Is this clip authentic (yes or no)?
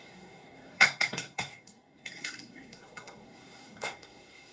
no